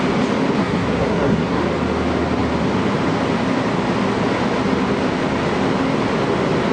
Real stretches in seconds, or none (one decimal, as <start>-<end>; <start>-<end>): 0.0-0.6; 1.6-6.7